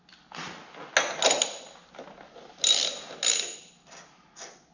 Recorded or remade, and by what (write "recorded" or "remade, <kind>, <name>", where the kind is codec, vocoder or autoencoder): recorded